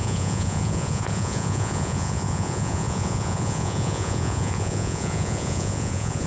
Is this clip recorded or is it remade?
remade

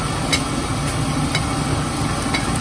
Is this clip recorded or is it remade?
recorded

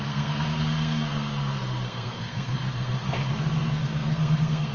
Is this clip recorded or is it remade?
remade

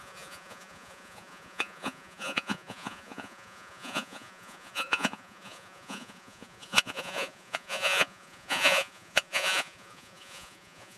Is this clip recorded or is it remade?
remade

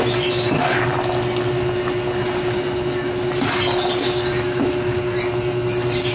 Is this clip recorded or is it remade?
recorded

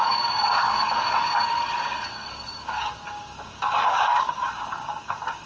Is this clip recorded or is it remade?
remade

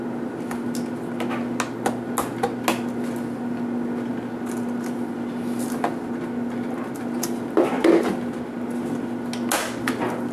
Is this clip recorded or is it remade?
recorded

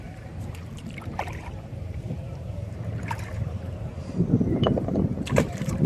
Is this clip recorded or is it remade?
remade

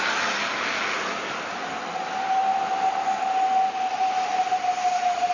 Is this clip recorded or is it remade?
recorded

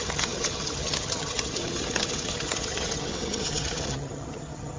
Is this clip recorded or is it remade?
remade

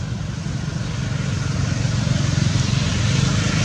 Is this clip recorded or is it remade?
recorded